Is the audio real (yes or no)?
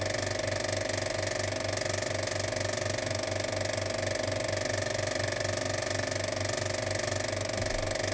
yes